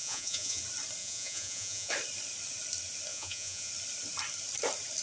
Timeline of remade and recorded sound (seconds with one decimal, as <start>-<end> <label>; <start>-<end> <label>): 0.0-0.6 remade; 0.6-1.0 recorded; 1.0-1.9 remade; 1.9-3.1 recorded; 3.1-3.7 remade; 3.7-5.0 recorded